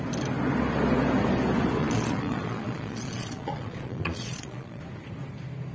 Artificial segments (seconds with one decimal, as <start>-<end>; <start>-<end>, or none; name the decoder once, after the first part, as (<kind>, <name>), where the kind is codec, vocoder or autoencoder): 1.8-4.8 (vocoder, Vocos)